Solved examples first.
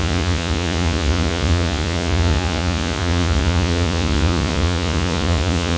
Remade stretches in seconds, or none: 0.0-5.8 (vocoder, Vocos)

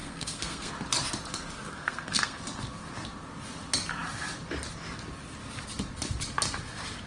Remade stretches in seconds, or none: 0.0-0.7 (codec, SNAC); 1.7-2.4

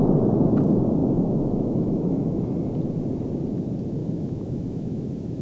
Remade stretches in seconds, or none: 1.0-2.4 (autoencoder, DAC-VAE); 4.0-5.4

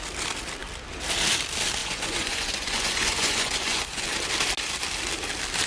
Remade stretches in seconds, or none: 1.8-4.0 (vocoder, Vocos)

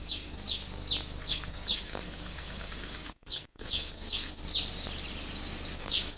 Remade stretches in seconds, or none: 0.0-0.6 (codec, SNAC); 1.2-4.4; 5.8-6.2